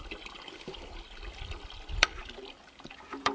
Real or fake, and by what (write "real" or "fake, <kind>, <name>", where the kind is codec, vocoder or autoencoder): fake, vocoder, BigVGAN v2